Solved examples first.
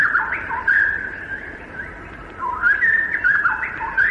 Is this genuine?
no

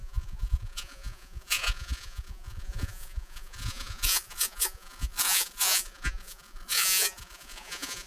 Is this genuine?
no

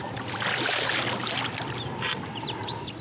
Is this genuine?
yes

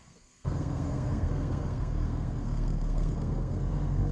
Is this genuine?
no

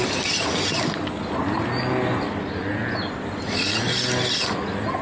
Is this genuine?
yes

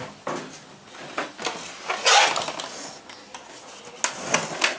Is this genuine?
yes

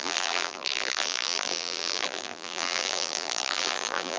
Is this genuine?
no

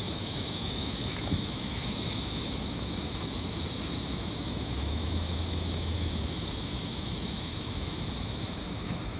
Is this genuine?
no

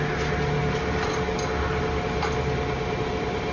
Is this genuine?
yes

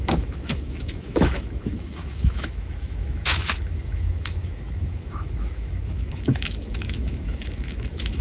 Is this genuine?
no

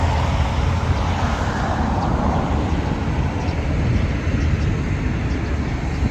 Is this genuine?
yes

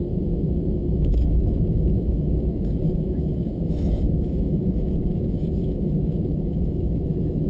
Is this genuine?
no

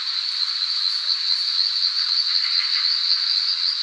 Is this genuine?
yes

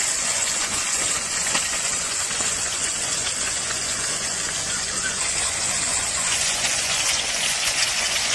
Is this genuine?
no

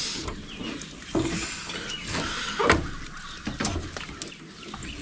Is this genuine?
yes